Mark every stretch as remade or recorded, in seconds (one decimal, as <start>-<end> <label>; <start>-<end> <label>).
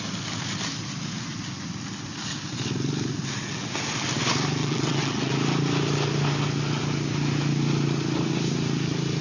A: 0.0-4.6 recorded; 4.6-5.3 remade; 5.3-9.2 recorded